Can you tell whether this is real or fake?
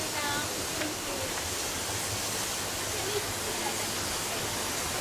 real